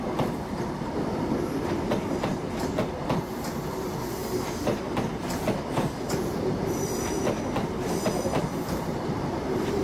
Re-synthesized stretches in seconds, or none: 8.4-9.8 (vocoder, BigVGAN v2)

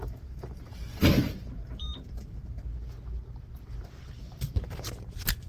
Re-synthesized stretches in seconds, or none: 0.0-2.7 (vocoder, BigVGAN v2); 4.2-5.5

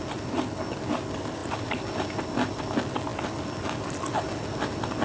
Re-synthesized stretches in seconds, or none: none